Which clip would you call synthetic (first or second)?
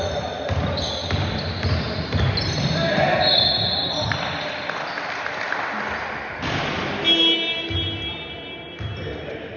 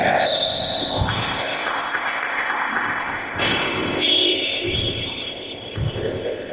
second